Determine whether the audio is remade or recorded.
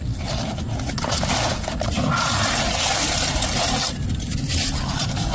recorded